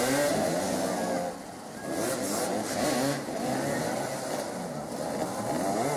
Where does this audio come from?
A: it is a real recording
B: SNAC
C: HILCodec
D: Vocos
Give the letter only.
A